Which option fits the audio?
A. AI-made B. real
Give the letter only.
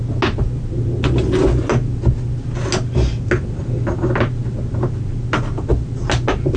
B